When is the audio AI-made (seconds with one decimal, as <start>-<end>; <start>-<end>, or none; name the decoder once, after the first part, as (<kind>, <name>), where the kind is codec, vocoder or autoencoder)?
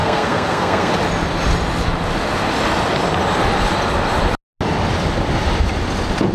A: 0.0-0.9 (codec, SNAC)